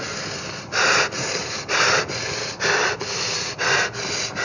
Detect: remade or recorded recorded